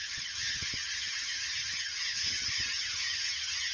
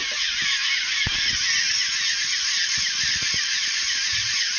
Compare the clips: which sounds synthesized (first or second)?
first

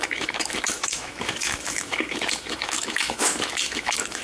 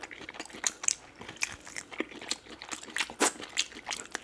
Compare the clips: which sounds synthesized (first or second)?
first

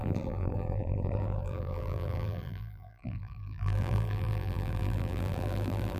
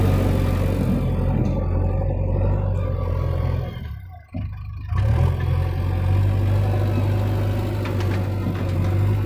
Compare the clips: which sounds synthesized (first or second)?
first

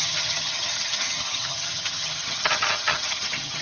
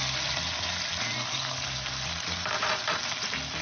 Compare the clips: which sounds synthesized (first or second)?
first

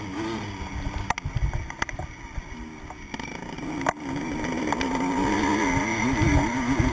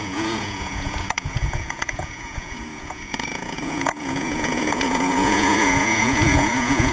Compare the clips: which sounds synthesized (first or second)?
second